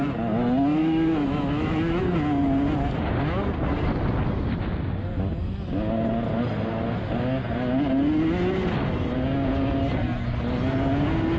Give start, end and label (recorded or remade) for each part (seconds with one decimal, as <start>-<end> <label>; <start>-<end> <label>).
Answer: 0.0-0.8 recorded; 0.8-2.0 remade; 2.0-11.4 recorded

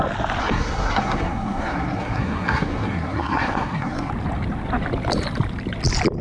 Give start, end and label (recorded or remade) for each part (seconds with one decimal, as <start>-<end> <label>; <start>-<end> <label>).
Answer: 0.0-0.4 recorded; 0.4-4.1 remade; 4.1-6.2 recorded